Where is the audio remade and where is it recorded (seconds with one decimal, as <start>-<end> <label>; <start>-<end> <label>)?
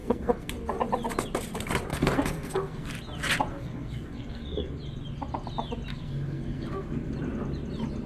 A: 0.0-0.5 remade; 0.5-1.9 recorded; 1.9-2.9 remade; 2.9-3.5 recorded; 3.5-4.8 remade; 4.8-5.9 recorded; 5.9-7.1 remade; 7.1-8.1 recorded